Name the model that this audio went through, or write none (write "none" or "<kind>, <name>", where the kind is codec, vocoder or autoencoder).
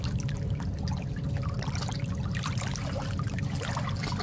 none